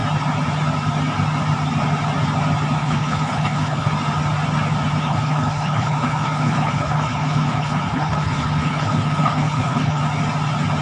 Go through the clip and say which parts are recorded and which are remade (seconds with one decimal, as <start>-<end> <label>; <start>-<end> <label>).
0.0-2.8 recorded; 2.8-3.9 remade; 3.9-5.0 recorded; 5.0-10.0 remade; 10.0-10.8 recorded